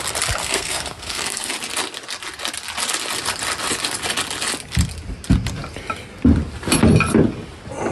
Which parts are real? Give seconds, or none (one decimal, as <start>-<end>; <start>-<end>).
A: 0.0-0.4; 1.5-7.9